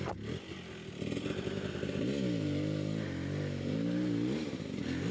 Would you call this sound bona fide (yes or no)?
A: yes